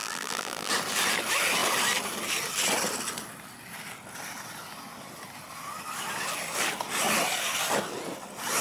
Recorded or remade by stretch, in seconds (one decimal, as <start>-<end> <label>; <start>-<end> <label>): 0.0-0.7 remade; 0.7-8.6 recorded